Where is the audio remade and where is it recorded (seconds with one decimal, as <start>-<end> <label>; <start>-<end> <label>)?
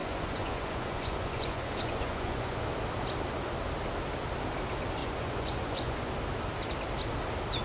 0.0-2.6 remade; 2.6-5.0 recorded; 5.0-6.1 remade; 6.1-7.6 recorded